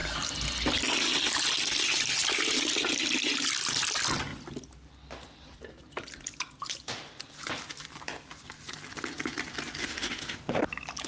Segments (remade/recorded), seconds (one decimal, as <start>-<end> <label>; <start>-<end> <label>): 0.0-9.8 recorded; 9.8-10.5 remade; 10.5-11.1 recorded

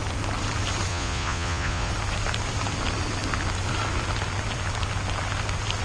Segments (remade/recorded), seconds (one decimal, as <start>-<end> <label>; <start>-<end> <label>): 0.0-0.9 recorded; 0.9-1.9 remade; 1.9-5.8 recorded